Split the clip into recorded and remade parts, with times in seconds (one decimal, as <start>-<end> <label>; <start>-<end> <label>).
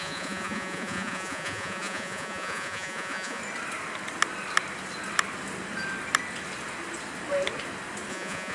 0.0-3.4 remade; 3.4-8.1 recorded; 8.1-8.5 remade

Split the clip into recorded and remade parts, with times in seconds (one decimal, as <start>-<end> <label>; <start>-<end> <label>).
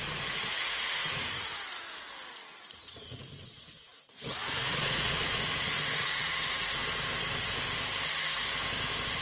0.0-1.5 remade; 1.5-2.6 recorded; 2.6-6.8 remade; 6.8-9.2 recorded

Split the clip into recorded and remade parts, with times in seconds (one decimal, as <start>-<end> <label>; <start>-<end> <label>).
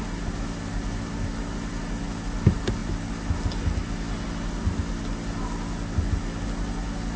0.0-7.2 recorded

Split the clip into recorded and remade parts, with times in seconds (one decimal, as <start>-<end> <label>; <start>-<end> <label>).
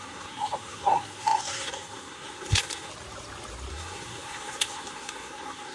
0.0-2.9 remade; 2.9-3.7 recorded; 3.7-5.7 remade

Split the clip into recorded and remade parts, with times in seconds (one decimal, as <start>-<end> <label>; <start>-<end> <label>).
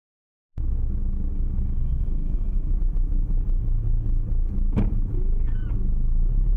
0.0-1.8 recorded; 1.8-2.7 remade; 2.7-6.6 recorded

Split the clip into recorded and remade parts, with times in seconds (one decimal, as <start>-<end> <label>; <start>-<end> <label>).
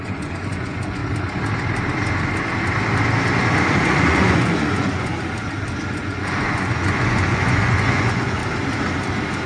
0.0-1.0 remade; 1.0-3.7 recorded; 3.7-5.1 remade; 5.1-5.9 recorded; 5.9-8.4 remade; 8.4-9.5 recorded